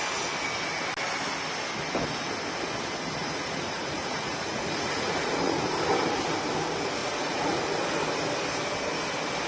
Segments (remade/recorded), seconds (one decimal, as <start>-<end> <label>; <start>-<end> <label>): 0.0-3.2 recorded; 3.2-5.7 remade; 5.7-7.0 recorded; 7.0-7.6 remade; 7.6-9.5 recorded